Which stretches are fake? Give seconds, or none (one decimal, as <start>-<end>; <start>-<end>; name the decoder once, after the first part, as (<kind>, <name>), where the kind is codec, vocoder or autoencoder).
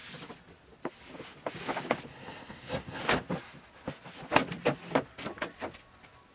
2.1-3.0 (codec, SNAC)